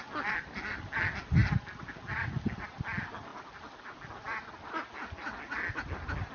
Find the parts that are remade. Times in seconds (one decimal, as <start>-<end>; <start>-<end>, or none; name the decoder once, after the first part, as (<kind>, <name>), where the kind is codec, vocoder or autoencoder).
none